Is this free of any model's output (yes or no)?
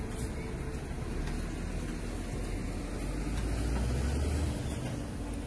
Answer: yes